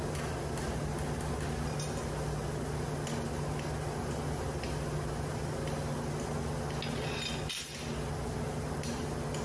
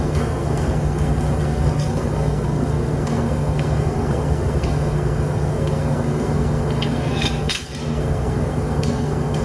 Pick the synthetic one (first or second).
second